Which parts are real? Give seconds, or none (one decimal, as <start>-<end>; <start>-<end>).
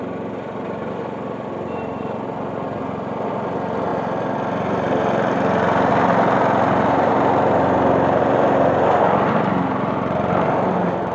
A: 0.0-11.1